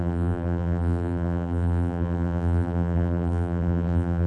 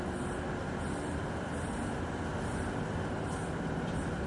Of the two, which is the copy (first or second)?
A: first